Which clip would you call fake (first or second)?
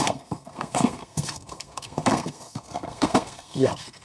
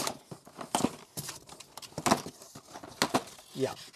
first